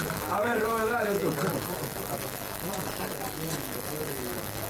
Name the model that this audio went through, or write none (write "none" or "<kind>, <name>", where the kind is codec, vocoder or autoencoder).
autoencoder, DAC-VAE